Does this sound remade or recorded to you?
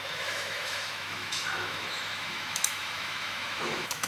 remade